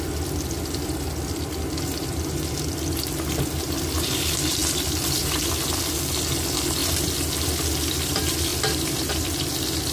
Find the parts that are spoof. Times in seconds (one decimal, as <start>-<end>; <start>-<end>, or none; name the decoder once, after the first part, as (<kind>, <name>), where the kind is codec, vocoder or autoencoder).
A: none

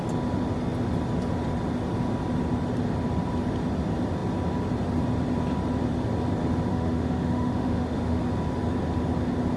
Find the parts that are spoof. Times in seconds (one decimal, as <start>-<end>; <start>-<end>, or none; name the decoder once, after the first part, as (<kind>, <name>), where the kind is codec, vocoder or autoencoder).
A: 6.7-8.2 (autoencoder, DAC-VAE)

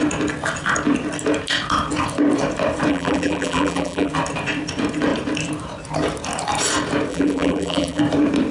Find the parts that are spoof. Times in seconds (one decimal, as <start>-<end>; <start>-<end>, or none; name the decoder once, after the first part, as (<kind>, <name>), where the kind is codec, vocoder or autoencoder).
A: 2.9-4.1 (vocoder, BigVGAN v2); 7.1-8.0

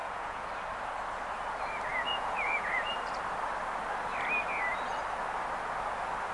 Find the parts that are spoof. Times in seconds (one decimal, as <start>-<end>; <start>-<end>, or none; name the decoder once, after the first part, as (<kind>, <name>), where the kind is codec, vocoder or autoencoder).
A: 0.0-0.5 (vocoder, Vocos); 1.9-2.9

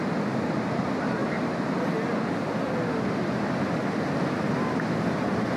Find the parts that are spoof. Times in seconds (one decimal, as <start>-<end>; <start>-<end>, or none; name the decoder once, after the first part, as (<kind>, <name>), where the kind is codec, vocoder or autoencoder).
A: none